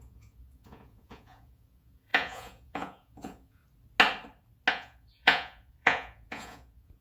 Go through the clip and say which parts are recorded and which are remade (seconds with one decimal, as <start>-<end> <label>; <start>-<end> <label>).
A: 0.0-3.6 remade; 3.6-4.7 recorded; 4.7-7.0 remade